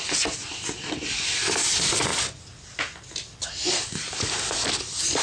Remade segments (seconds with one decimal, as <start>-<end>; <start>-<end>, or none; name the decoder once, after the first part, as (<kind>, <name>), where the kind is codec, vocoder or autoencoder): none